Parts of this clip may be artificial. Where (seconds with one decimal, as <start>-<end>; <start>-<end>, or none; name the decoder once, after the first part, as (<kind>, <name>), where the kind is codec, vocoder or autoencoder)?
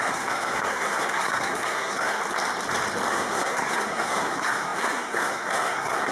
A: 0.0-2.2 (codec, SNAC); 3.1-6.1